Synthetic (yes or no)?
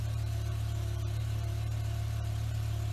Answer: yes